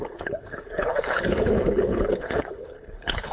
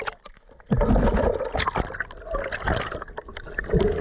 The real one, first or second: second